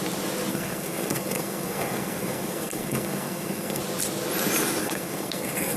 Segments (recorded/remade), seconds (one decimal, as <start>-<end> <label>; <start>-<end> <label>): 0.0-0.5 recorded; 0.5-3.8 remade; 3.8-4.8 recorded; 4.8-5.8 remade